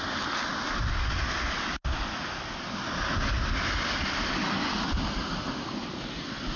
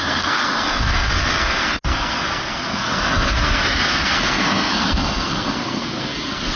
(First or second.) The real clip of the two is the first